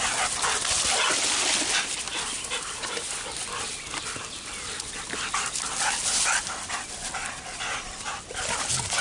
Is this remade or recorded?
recorded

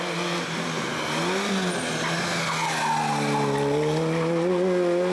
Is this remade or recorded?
recorded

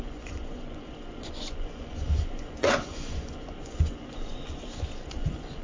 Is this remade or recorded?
remade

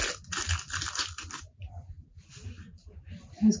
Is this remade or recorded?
recorded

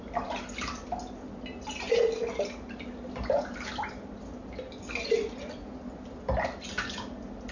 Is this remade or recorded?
recorded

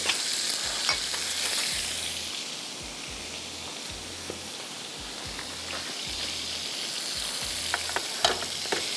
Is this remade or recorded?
recorded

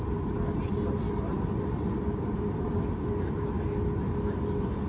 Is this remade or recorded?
recorded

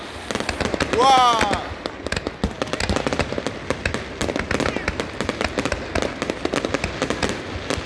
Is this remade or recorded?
recorded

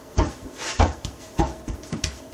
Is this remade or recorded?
remade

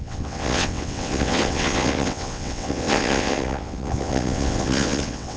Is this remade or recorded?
remade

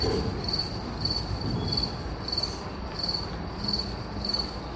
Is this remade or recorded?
recorded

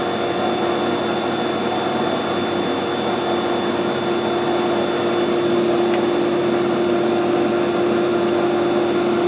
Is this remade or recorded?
recorded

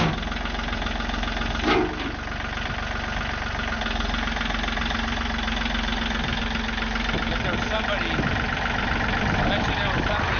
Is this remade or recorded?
recorded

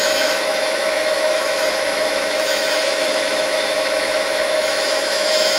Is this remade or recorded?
remade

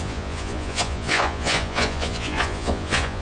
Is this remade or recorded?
remade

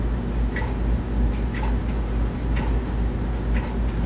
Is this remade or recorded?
recorded